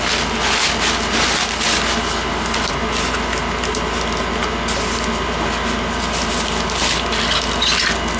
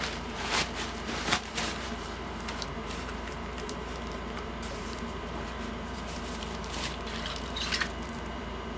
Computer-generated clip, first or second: second